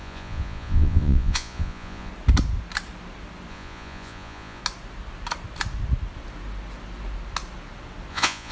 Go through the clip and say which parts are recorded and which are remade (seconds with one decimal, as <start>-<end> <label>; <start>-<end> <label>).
0.0-2.1 remade; 2.1-3.5 recorded; 3.5-4.6 remade; 4.6-8.1 recorded; 8.1-8.5 remade